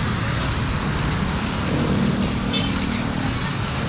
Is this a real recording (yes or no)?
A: yes